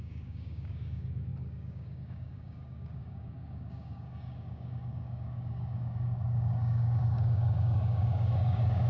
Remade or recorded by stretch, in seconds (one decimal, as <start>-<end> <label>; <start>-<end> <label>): 0.0-8.9 remade